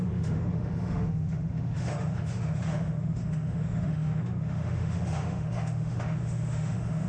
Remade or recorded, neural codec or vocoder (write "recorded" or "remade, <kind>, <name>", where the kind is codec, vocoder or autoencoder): remade, autoencoder, DAC-VAE